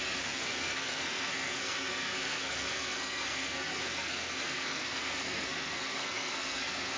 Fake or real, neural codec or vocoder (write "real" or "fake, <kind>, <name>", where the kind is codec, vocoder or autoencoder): fake, codec, SNAC